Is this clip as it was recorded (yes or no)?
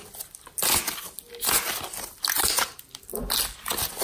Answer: yes